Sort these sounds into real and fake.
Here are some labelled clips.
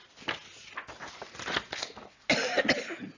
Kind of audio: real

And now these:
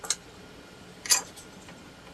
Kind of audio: real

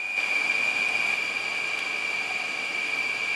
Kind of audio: real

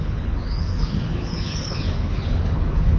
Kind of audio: fake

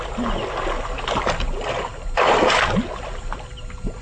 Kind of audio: real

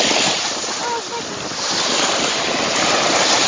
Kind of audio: real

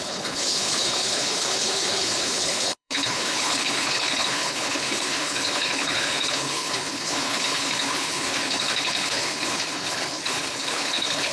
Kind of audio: fake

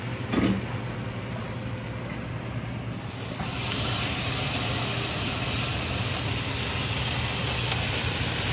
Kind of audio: real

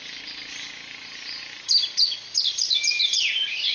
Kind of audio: real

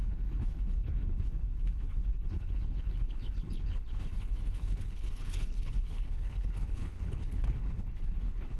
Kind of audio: fake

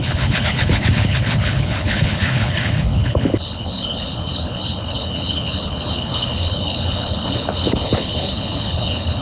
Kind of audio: fake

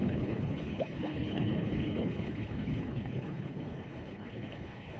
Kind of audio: fake